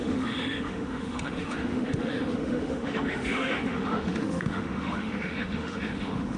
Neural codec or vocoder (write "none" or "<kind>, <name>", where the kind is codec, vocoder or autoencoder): autoencoder, DAC-VAE